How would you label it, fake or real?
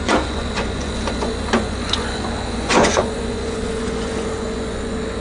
fake